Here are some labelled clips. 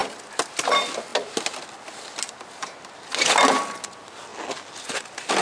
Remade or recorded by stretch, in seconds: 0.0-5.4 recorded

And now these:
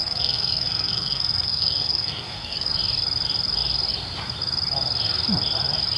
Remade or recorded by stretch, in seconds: 0.0-2.7 remade; 2.7-6.0 recorded

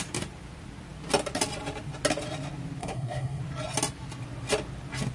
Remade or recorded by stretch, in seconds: 0.0-2.8 recorded; 2.8-3.4 remade; 3.4-5.1 recorded

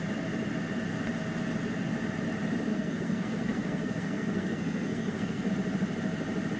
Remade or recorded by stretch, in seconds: 0.0-2.7 recorded; 2.7-5.5 remade; 5.5-6.6 recorded